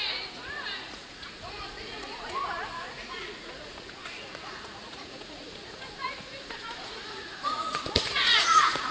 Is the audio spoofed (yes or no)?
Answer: yes